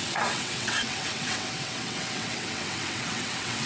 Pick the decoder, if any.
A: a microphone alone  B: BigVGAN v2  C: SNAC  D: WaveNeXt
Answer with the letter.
D